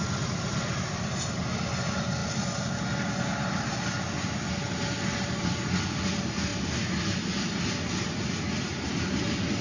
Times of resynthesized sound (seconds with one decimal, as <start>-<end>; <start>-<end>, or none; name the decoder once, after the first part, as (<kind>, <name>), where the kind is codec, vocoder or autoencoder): none